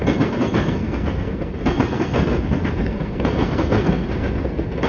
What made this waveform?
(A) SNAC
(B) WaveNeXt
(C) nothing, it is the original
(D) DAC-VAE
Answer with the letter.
A